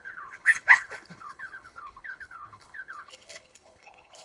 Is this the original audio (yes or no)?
no